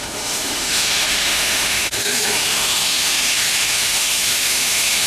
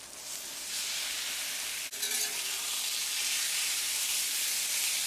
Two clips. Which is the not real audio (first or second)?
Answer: first